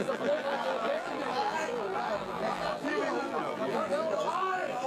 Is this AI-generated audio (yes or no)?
yes